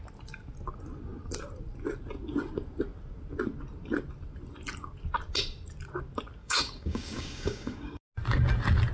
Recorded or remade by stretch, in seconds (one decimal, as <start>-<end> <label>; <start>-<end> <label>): 0.0-6.4 recorded; 6.4-8.0 remade; 8.0-8.9 recorded